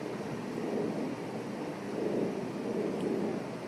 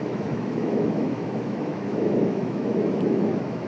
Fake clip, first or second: second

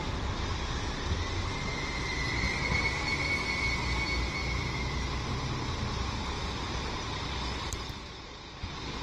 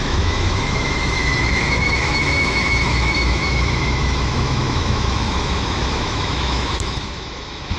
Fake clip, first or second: second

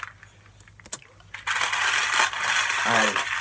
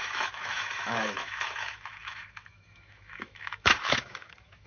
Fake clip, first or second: second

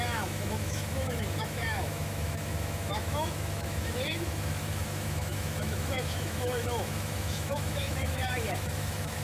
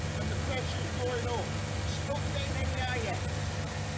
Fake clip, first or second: first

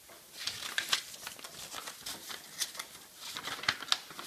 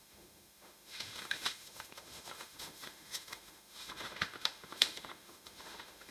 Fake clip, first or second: second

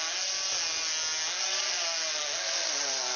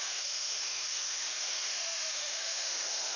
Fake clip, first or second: second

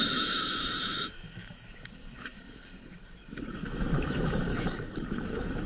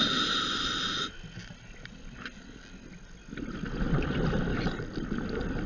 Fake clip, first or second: first